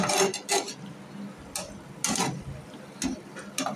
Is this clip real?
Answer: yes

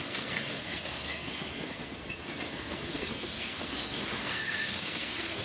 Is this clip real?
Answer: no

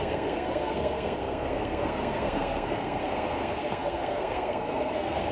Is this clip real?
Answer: no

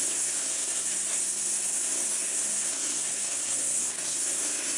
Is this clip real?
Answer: no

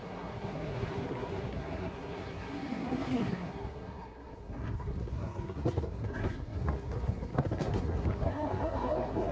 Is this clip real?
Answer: no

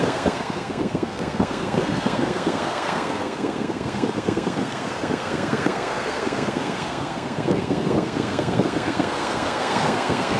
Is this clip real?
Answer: no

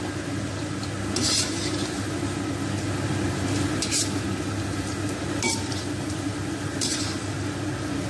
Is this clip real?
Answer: yes